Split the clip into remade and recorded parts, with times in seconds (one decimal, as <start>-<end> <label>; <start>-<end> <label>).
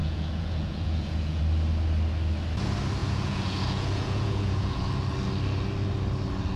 0.0-1.4 remade; 1.4-3.0 recorded; 3.0-4.9 remade; 4.9-6.6 recorded